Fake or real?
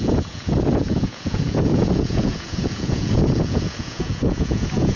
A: fake